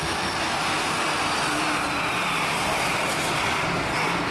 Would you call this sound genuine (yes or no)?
yes